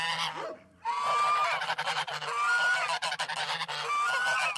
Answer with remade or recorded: recorded